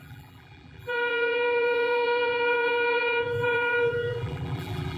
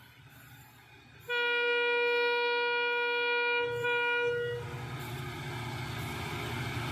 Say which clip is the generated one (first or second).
first